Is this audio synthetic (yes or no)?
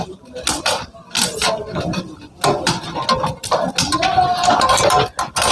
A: no